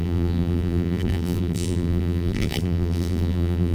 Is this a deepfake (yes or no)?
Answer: yes